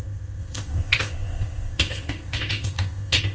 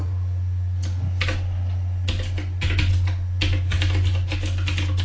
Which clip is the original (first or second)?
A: second